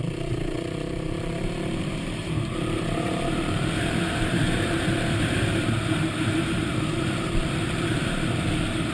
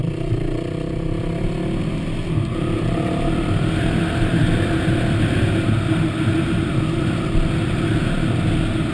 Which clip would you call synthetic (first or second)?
first